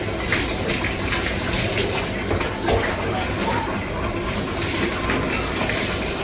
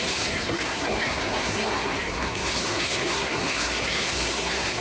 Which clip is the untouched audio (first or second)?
first